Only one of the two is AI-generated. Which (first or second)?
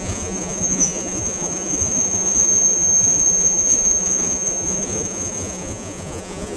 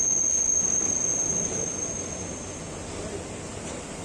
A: first